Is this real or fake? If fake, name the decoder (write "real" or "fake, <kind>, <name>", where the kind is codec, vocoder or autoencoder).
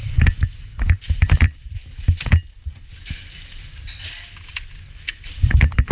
real